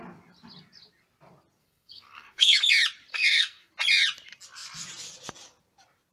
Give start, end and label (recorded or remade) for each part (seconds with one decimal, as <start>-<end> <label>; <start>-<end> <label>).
0.0-1.6 recorded; 1.6-2.7 remade; 2.7-3.1 recorded; 3.1-3.7 remade; 3.7-6.1 recorded